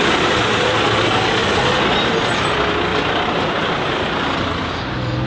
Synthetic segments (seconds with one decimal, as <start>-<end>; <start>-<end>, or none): 0.0-0.5; 2.9-3.7